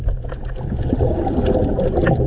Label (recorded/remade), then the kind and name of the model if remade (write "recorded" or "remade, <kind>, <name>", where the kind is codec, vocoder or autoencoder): recorded